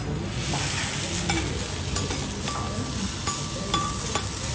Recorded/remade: recorded